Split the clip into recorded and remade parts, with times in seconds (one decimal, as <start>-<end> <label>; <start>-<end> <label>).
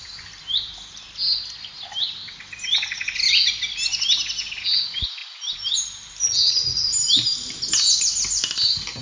0.0-9.0 recorded